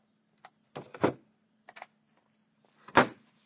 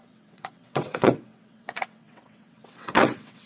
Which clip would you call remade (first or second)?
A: second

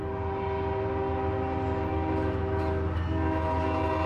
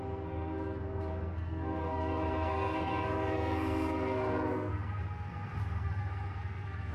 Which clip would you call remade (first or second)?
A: second